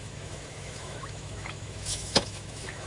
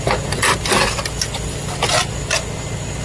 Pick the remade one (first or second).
first